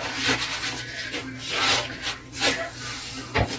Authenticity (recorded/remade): recorded